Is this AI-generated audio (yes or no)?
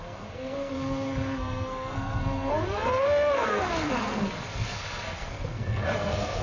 yes